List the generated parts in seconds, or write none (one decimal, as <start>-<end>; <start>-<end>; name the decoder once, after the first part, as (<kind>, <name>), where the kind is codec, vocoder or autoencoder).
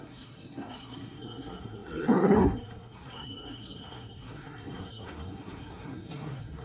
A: 0.0-6.6 (codec, SNAC)